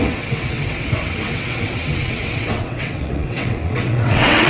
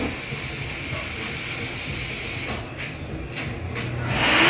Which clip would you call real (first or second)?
second